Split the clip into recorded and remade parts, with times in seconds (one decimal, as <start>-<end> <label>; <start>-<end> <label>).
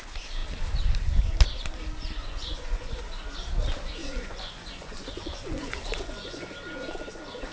0.0-2.2 recorded; 2.2-3.0 remade; 3.0-4.0 recorded; 4.0-6.5 remade; 6.5-7.5 recorded